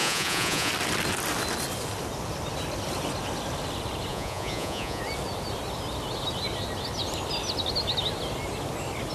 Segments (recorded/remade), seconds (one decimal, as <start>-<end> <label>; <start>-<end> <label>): 0.0-0.7 remade; 0.7-4.1 recorded; 4.1-5.0 remade; 5.0-9.1 recorded